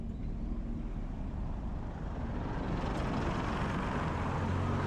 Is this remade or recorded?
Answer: recorded